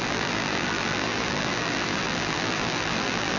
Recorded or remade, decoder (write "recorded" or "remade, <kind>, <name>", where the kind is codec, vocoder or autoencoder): remade, vocoder, BigVGAN v2